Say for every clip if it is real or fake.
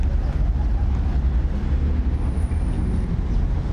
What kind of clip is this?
real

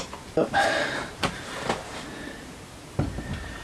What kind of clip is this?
fake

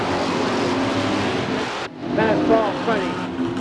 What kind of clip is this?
real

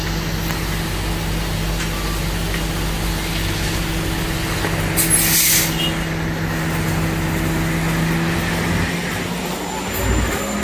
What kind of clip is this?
real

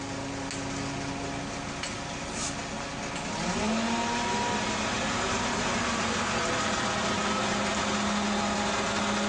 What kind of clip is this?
real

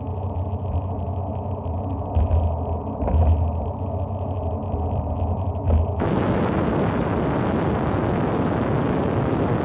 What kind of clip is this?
real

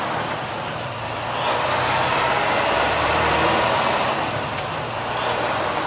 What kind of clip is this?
fake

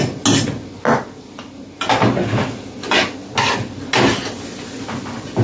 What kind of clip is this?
real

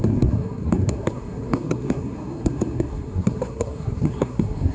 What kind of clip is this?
fake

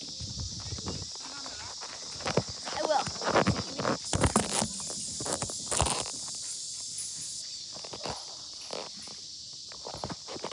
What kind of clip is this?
real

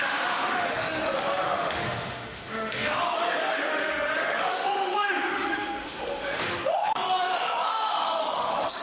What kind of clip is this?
fake